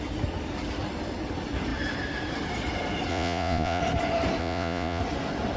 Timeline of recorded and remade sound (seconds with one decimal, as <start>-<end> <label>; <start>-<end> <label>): 0.0-3.1 recorded; 3.1-3.8 remade; 3.8-4.4 recorded; 4.4-5.0 remade; 5.0-5.6 recorded